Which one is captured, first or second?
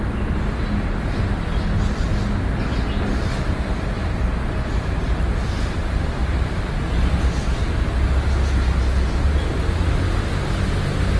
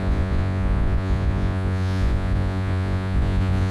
first